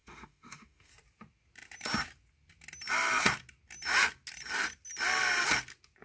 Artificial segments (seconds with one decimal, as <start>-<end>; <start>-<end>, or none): 0.0-0.9